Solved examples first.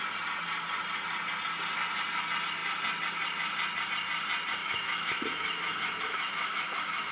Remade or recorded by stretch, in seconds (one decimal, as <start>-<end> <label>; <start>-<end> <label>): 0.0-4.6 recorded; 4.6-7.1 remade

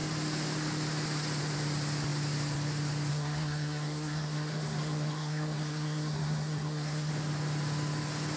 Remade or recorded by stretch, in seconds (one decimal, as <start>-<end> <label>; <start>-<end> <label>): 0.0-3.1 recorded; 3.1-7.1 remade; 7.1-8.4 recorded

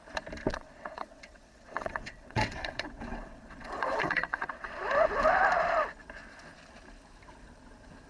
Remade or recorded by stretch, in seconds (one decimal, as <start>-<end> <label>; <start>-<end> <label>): 0.0-0.5 recorded; 0.5-4.8 remade; 4.8-8.1 recorded